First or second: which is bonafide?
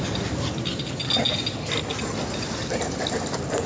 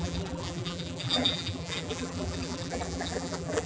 first